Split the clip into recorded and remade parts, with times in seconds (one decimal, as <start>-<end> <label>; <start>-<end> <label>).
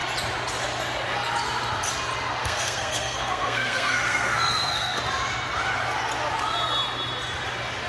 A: 0.0-2.4 recorded; 2.4-5.0 remade; 5.0-7.9 recorded